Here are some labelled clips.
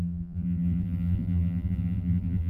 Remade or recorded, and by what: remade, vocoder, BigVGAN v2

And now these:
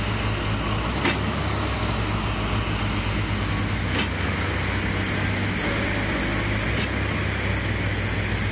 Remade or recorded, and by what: recorded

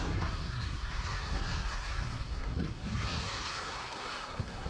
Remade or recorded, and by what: remade, codec, SNAC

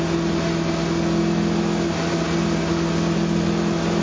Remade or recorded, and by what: recorded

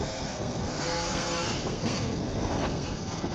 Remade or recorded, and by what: remade, codec, SNAC